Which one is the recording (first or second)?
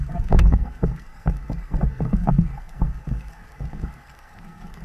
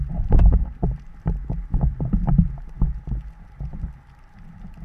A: second